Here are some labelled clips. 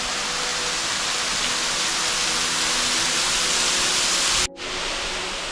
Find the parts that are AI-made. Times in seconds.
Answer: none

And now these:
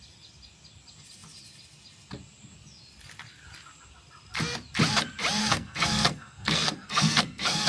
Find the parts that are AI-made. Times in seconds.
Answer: 5.4-7.7 (codec, SNAC)

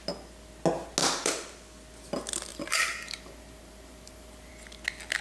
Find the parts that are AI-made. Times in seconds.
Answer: 1.0-1.5 (vocoder, BigVGAN v2); 2.5-4.5

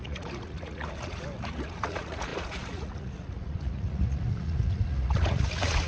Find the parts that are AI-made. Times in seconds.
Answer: 0.0-5.9 (vocoder, Vocos)

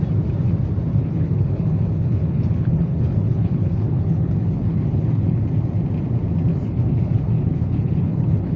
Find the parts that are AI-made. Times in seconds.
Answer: 0.9-5.4 (codec, HILCodec); 6.5-8.6